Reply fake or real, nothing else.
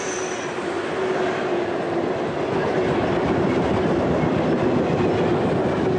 real